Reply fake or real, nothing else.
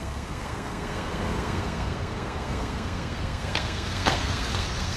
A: fake